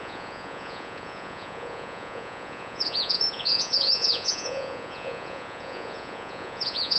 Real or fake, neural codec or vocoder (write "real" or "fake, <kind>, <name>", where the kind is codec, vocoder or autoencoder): fake, vocoder, Vocos